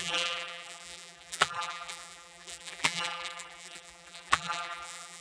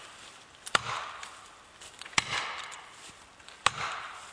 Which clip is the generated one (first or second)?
first